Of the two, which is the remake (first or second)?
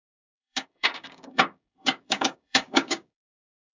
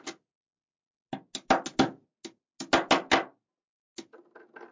first